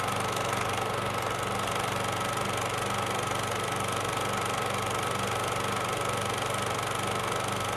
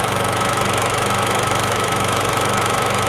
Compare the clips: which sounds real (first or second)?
first